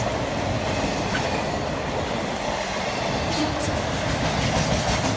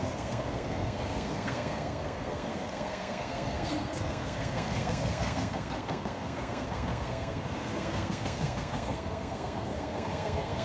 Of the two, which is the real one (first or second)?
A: first